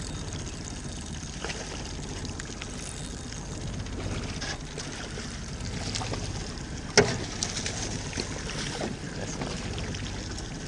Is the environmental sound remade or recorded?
recorded